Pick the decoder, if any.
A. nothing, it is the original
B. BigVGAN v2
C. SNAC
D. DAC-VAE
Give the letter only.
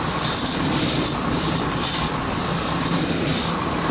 B